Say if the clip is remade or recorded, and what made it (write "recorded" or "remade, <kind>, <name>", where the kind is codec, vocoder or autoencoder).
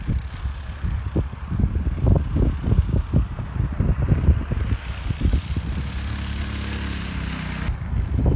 recorded